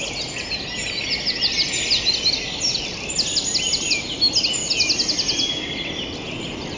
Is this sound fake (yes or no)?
no